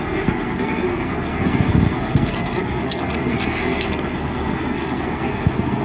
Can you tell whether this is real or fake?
fake